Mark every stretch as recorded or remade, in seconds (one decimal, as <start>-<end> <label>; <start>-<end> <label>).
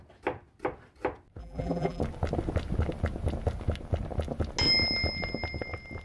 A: 0.0-1.4 recorded; 1.4-2.0 remade; 2.0-6.0 recorded